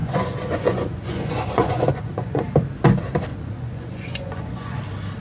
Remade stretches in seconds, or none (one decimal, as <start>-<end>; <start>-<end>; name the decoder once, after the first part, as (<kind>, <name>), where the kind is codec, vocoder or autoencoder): 0.0-2.4 (vocoder, Vocos); 3.3-4.8